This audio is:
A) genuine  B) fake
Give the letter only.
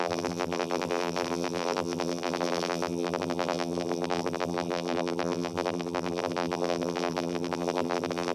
B